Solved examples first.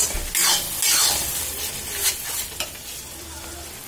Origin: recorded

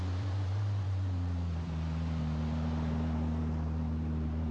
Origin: remade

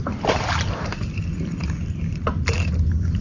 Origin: remade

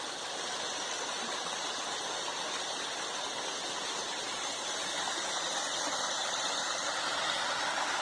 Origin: recorded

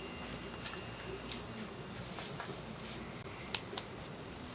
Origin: remade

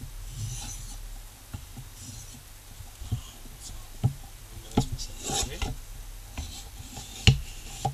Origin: recorded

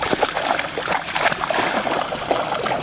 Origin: remade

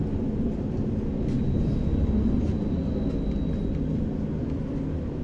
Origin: recorded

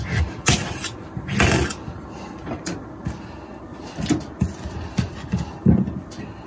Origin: recorded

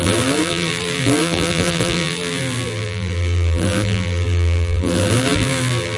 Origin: remade